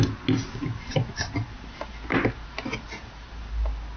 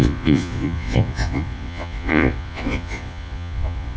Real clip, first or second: first